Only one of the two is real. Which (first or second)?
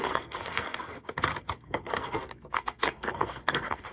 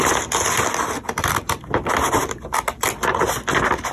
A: second